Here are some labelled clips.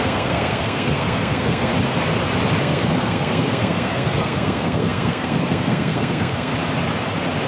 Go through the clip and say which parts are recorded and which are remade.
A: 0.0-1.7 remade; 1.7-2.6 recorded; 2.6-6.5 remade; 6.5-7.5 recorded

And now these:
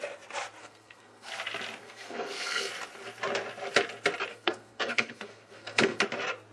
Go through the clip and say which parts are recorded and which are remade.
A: 0.0-0.6 recorded; 0.6-1.3 remade; 1.3-1.8 recorded; 1.8-2.7 remade; 2.7-4.3 recorded; 4.3-6.0 remade; 6.0-6.5 recorded

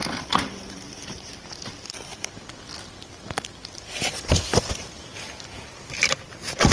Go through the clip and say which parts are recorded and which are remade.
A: 0.0-1.3 remade; 1.3-2.1 recorded; 2.1-6.1 remade; 6.1-6.7 recorded

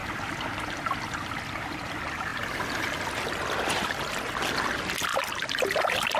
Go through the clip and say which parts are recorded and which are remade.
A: 0.0-6.2 recorded

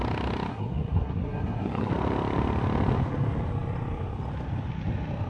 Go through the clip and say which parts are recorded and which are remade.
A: 0.0-0.5 recorded; 0.5-1.9 remade; 1.9-5.3 recorded

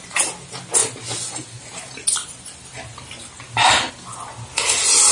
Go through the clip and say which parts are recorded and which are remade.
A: 0.0-5.1 recorded

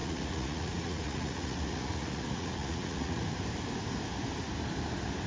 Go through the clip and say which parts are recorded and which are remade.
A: 0.0-3.2 remade; 3.2-5.3 recorded

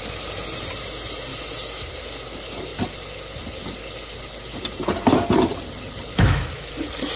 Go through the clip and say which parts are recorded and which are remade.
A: 0.0-1.3 recorded; 1.3-1.9 remade; 1.9-6.1 recorded; 6.1-6.8 remade; 6.8-7.2 recorded